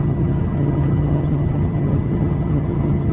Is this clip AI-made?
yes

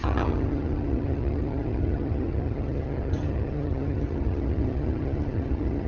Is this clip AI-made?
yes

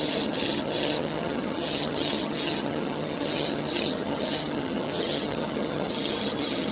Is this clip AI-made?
yes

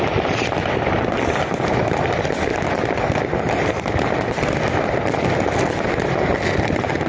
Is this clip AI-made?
no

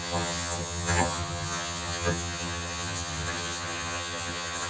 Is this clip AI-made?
yes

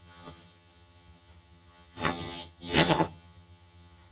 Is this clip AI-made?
yes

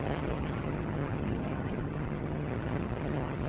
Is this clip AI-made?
yes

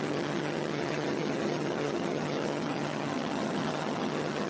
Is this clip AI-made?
yes